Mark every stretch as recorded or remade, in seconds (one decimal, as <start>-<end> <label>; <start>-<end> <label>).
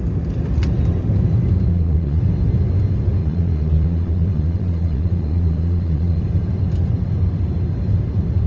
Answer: 0.0-1.7 recorded; 1.7-2.2 remade; 2.2-3.2 recorded; 3.2-6.2 remade; 6.2-8.5 recorded